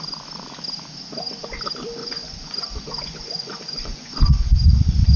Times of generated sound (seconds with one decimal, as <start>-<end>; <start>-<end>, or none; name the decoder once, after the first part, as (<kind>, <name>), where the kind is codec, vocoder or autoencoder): 2.0-5.2 (vocoder, Vocos)